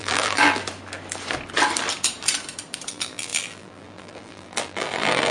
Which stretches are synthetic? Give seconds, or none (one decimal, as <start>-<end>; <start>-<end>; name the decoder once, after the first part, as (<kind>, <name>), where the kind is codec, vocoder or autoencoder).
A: 0.0-0.6 (vocoder, BigVGAN v2); 2.9-5.3